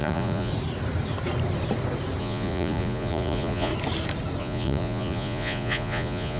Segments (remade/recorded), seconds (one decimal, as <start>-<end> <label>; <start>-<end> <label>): 0.0-0.5 remade; 0.5-2.2 recorded; 2.2-3.7 remade; 3.7-4.4 recorded; 4.4-6.4 remade